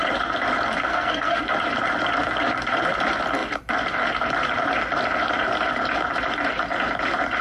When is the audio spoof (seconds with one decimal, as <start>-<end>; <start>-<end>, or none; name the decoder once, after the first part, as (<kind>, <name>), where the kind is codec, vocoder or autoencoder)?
0.9-1.4 (codec, SNAC)